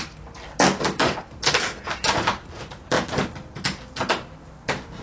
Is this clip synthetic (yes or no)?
no